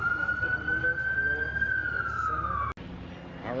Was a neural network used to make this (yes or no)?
no